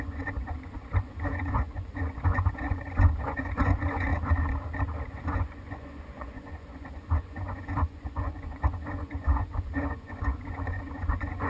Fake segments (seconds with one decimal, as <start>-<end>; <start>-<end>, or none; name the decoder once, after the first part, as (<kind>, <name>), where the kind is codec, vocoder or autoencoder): 0.0-4.1 (vocoder, Vocos); 5.1-11.5